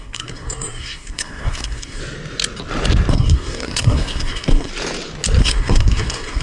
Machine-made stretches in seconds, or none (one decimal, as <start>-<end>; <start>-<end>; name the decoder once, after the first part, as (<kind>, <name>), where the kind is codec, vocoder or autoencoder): 0.0-2.0 (codec, SNAC); 3.1-4.7; 5.4-6.4